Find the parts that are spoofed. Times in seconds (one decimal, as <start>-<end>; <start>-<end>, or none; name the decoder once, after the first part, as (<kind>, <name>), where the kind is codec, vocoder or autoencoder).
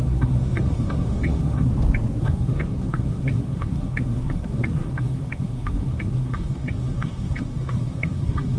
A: 0.0-1.7 (codec, SNAC); 2.2-8.6